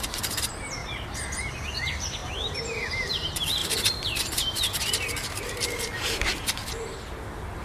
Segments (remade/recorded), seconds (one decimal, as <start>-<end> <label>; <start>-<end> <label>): 0.0-2.2 remade; 2.2-2.9 recorded; 2.9-6.3 remade; 6.3-7.6 recorded

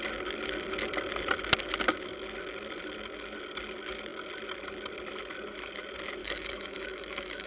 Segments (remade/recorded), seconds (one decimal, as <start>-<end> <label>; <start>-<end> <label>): 0.0-6.2 recorded; 6.2-7.5 remade

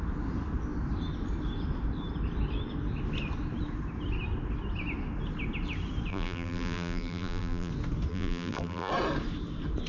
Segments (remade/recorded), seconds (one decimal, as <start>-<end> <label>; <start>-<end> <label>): 0.0-6.1 recorded; 6.1-7.7 remade; 7.7-8.1 recorded; 8.1-8.9 remade; 8.9-9.9 recorded